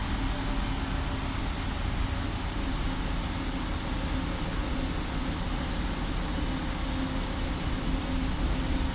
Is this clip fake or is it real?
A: real